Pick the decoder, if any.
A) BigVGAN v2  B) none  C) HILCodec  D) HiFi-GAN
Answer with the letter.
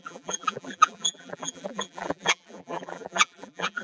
A